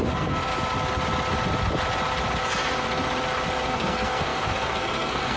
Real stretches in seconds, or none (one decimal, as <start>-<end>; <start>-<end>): 0.5-3.7